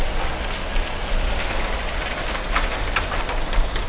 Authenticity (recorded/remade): recorded